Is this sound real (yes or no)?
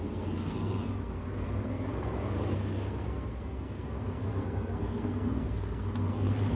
no